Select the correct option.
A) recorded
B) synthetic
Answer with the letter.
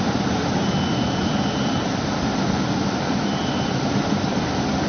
A